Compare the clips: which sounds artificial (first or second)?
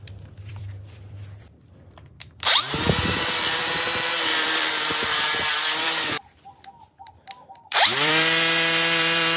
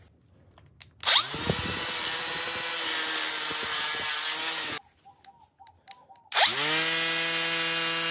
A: first